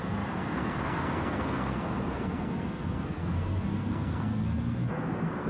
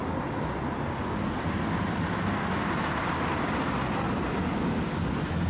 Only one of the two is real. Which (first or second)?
second